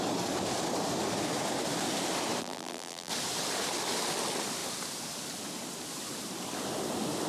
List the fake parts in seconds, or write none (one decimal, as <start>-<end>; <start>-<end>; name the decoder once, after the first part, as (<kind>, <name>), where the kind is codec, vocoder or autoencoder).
2.4-3.1 (vocoder, BigVGAN v2)